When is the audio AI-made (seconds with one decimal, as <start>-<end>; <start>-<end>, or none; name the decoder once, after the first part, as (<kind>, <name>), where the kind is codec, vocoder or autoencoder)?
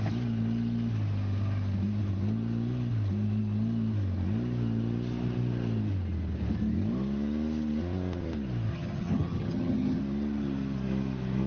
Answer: 8.7-10.0 (vocoder, HiFi-GAN)